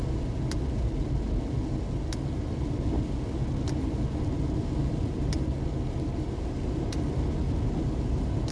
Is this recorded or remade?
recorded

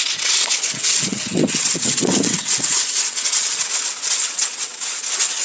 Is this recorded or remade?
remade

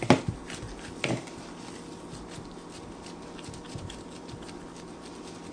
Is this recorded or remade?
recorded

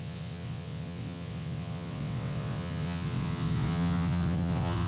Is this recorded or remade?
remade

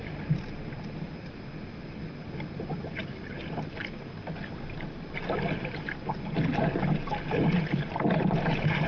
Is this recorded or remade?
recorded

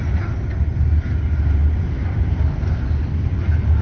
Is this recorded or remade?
recorded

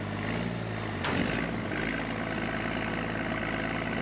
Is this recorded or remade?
recorded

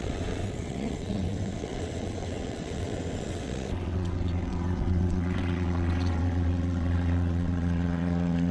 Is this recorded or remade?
remade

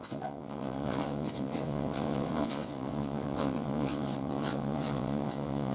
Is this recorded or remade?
remade